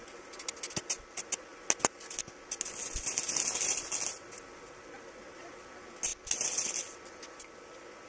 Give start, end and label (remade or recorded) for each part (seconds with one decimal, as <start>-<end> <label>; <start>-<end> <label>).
0.0-8.1 recorded